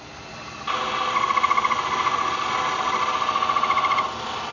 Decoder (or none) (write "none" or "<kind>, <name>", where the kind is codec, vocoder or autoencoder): none